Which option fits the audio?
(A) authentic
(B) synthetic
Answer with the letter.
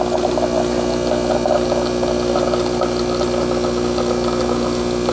A